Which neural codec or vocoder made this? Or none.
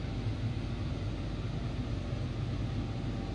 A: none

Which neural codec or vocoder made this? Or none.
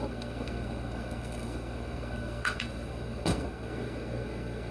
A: codec, SNAC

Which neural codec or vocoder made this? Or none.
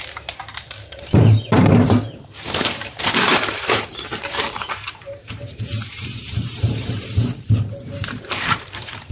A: vocoder, BigVGAN v2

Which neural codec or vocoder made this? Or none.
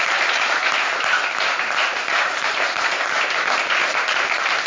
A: vocoder, BigVGAN v2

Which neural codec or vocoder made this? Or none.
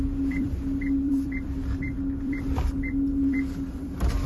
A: vocoder, BigVGAN v2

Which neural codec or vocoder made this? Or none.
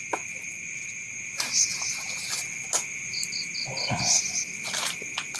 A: none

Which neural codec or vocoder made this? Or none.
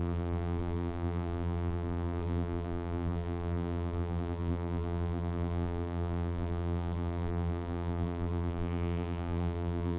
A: vocoder, BigVGAN v2